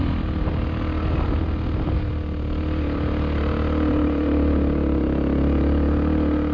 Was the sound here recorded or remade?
recorded